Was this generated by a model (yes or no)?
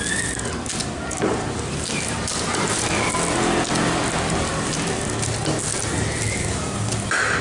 no